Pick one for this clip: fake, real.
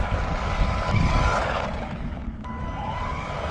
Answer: fake